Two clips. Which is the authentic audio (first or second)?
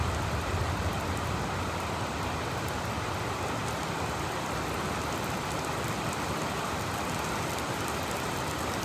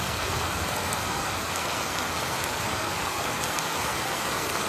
first